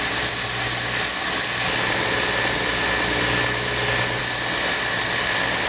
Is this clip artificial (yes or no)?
no